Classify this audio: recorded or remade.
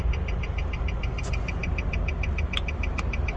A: recorded